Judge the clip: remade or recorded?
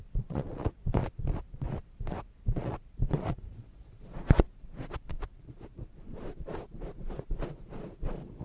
remade